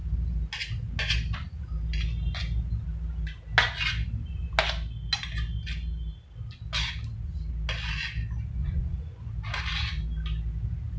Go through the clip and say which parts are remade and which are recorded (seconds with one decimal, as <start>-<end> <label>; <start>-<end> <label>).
0.0-8.6 recorded; 8.6-9.3 remade; 9.3-11.0 recorded